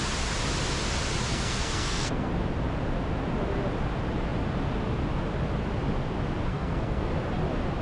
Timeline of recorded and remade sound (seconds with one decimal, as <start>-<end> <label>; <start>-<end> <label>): 0.0-1.3 recorded; 1.3-2.3 remade; 2.3-6.5 recorded; 6.5-7.1 remade; 7.1-7.8 recorded